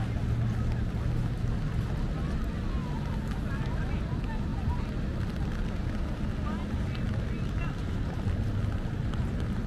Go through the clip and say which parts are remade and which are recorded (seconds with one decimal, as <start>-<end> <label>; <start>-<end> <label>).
0.0-9.7 recorded